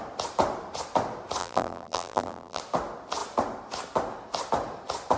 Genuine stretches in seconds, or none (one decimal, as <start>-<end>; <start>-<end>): 0.0-1.4; 2.6-5.2